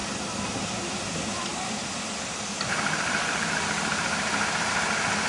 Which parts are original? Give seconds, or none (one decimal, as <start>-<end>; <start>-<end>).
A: 0.0-0.6